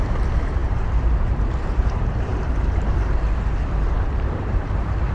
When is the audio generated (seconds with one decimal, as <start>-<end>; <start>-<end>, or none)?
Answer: 0.0-5.1